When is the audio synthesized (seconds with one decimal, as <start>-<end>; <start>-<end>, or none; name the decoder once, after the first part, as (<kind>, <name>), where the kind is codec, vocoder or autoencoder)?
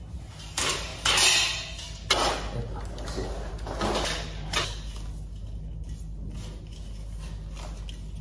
none